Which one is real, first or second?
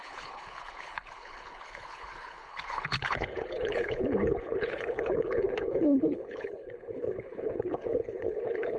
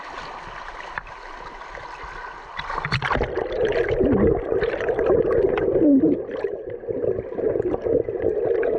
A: second